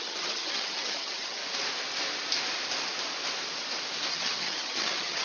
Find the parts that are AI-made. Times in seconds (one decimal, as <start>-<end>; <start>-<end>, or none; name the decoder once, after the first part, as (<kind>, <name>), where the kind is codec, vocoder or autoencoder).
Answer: 0.0-1.4 (vocoder, HiFi-GAN); 4.1-5.2